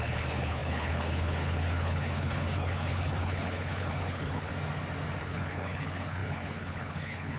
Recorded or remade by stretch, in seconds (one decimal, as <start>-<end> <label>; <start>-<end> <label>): 0.0-4.5 remade; 4.5-5.2 recorded; 5.2-7.4 remade